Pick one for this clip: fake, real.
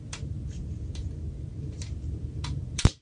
fake